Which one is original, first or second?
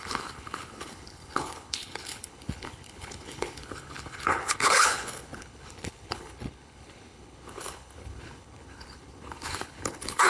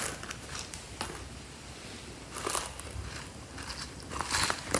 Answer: second